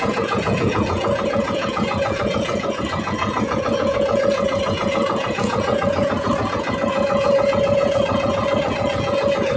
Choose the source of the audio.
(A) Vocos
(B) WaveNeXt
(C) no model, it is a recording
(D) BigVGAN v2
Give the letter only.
A